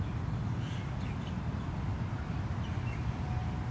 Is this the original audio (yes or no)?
yes